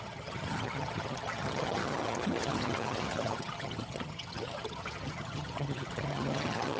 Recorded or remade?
remade